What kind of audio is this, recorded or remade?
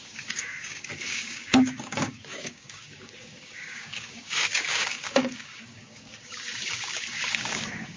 remade